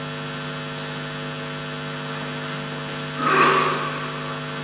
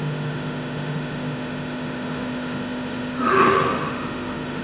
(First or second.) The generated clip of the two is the second